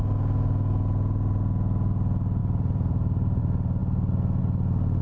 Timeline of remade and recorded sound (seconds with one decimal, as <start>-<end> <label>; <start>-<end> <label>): 0.0-2.4 recorded; 2.4-3.4 remade; 3.4-5.0 recorded